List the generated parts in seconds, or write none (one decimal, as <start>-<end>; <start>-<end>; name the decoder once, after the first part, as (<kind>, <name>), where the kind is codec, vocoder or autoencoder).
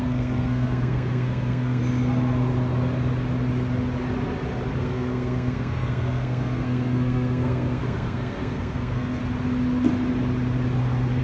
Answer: 0.0-1.8 (codec, SNAC); 4.8-9.2